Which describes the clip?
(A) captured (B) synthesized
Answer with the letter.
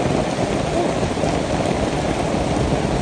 A